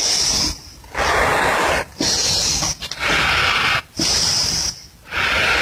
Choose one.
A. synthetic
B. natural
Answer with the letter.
B